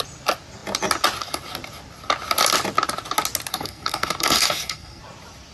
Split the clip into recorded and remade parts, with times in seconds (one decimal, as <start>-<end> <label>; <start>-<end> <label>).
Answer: 0.0-3.5 recorded; 3.5-5.0 remade; 5.0-5.5 recorded